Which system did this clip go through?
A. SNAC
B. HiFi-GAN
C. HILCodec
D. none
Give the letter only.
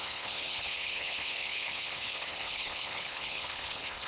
C